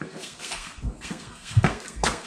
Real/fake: fake